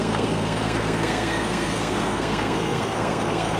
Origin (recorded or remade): remade